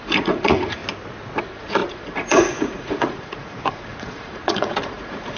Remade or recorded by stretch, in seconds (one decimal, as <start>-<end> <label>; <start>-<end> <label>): 0.0-0.8 remade; 0.8-1.4 recorded; 1.4-5.4 remade